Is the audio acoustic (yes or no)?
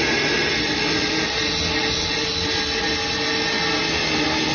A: yes